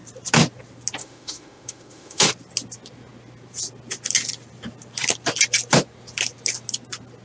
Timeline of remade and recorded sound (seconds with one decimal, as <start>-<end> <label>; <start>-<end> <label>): 0.0-1.0 recorded; 1.0-2.3 remade; 2.3-7.2 recorded